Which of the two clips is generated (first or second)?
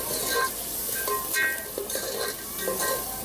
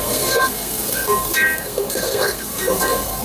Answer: second